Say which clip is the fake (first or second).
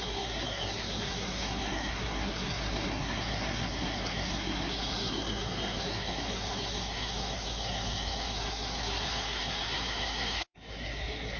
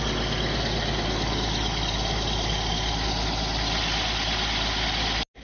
first